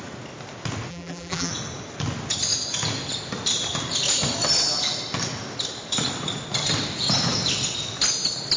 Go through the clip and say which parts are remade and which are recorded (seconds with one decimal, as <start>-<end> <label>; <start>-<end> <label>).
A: 0.0-0.9 recorded; 0.9-1.5 remade; 1.5-8.6 recorded